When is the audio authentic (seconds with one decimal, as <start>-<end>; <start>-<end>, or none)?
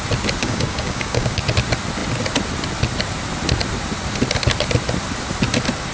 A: 0.0-0.4; 1.4-5.9